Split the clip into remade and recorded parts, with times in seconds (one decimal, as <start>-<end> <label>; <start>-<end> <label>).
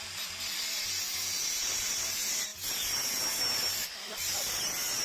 0.0-5.0 recorded